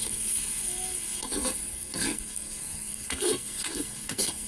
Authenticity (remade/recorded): remade